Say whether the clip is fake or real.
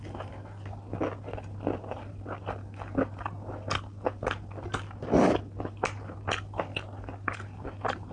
real